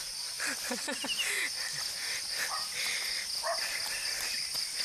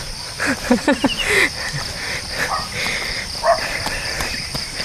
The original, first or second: first